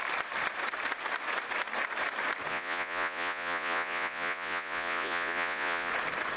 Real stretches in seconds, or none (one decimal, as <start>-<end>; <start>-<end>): 0.0-2.5; 5.9-6.4